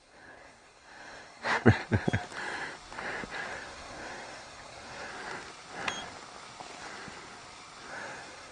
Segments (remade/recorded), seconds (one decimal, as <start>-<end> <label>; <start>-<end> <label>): 0.0-1.8 remade; 1.8-3.5 recorded; 3.5-5.1 remade; 5.1-7.9 recorded; 7.9-8.5 remade